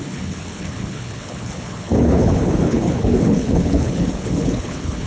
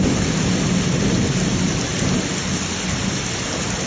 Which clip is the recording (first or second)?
second